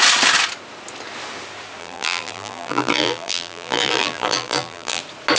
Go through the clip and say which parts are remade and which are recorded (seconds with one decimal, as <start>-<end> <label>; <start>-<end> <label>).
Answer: 0.0-1.8 recorded; 1.8-5.0 remade; 5.0-5.4 recorded